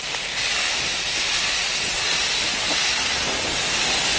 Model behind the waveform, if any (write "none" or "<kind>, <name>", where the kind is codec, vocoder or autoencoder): vocoder, BigVGAN v2